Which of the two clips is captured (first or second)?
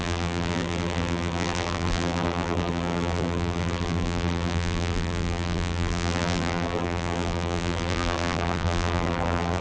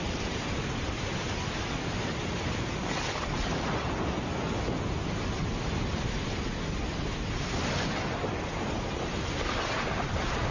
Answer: second